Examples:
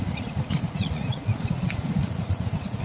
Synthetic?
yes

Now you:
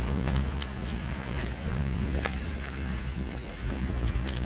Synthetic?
yes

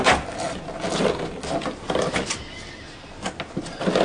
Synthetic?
no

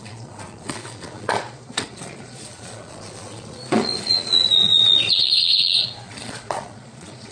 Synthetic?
yes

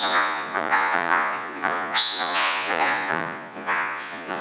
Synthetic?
yes